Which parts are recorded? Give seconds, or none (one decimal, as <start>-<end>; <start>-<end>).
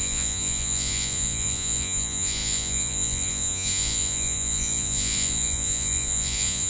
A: none